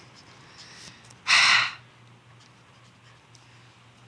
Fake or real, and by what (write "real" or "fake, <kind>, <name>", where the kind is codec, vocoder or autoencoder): real